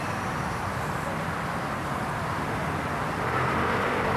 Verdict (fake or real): real